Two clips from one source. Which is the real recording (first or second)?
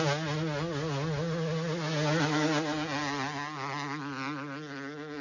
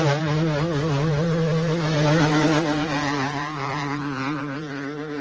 first